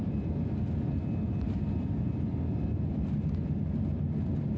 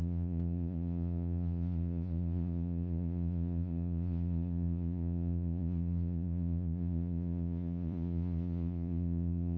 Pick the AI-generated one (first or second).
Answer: second